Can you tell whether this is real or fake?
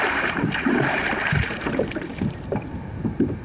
fake